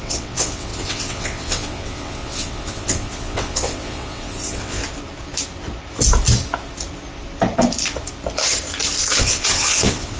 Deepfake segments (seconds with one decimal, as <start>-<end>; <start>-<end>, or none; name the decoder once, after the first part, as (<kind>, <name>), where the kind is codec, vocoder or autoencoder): 0.0-4.8 (vocoder, WaveNeXt); 9.2-10.2